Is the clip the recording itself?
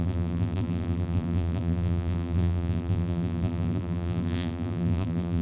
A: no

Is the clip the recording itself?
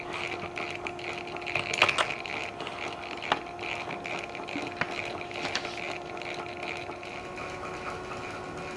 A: yes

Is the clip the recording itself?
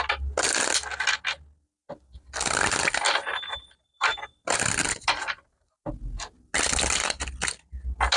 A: yes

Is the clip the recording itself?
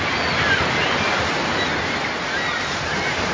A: yes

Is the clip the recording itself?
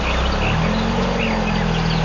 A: yes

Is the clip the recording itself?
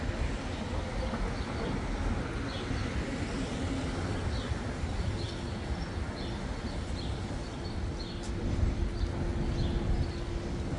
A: yes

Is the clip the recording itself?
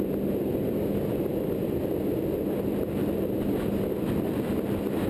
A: yes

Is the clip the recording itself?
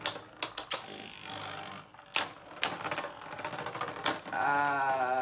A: yes